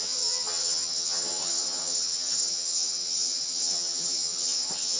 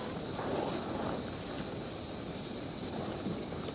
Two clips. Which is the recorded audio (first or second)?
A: second